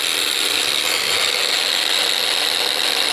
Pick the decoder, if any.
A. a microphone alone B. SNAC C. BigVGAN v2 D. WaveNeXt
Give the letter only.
C